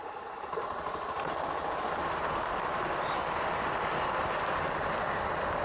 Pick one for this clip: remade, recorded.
recorded